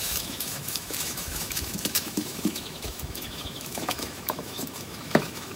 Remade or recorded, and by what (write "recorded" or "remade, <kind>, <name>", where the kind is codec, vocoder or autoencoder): remade, autoencoder, DAC-VAE